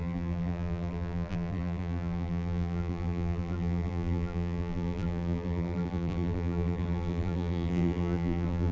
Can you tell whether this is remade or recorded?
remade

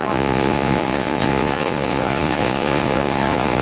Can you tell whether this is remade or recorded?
remade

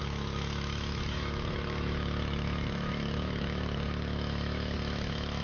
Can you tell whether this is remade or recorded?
remade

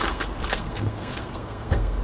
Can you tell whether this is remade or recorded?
remade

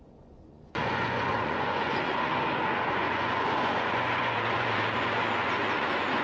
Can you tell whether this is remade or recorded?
remade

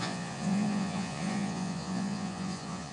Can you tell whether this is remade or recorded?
remade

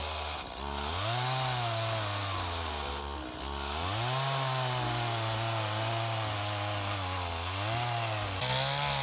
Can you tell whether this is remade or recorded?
recorded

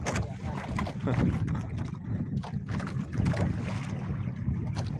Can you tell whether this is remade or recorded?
recorded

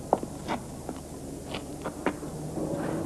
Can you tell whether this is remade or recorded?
recorded